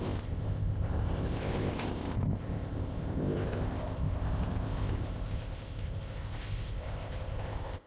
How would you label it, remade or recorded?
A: remade